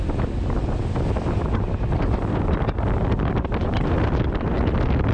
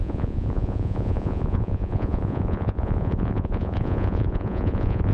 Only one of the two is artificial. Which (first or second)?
second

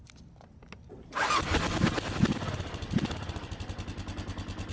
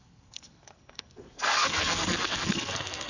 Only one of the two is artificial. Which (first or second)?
second